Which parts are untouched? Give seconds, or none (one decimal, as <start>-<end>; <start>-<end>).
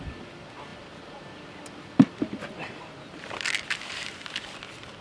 0.0-0.7; 3.7-5.0